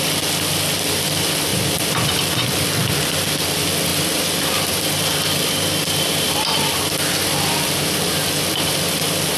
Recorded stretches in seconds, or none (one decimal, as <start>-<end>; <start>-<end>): 1.5-2.9